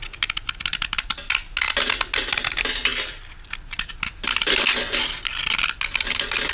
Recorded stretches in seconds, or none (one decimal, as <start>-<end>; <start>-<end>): 0.0-0.7; 1.3-6.5